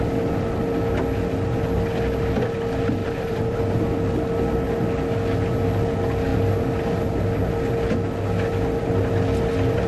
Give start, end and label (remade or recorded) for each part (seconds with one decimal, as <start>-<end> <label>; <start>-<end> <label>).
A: 0.0-3.0 recorded; 3.0-3.6 remade; 3.6-9.9 recorded